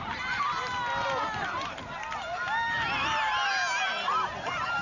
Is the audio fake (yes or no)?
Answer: no